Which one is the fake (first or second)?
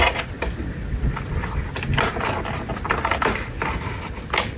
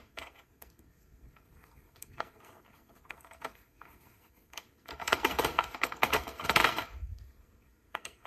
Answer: second